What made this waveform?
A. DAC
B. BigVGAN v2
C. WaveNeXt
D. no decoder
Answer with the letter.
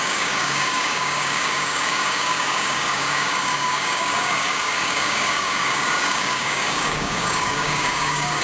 A